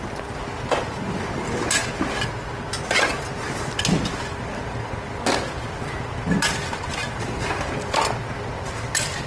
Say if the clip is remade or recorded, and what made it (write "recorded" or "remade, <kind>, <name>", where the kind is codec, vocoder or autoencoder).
recorded